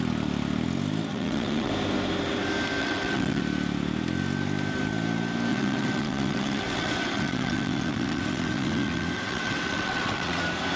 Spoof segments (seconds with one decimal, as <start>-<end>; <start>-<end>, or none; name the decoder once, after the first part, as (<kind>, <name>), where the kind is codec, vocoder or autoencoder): 1.1-1.7 (vocoder, WaveNeXt); 2.8-3.4; 5.5-10.4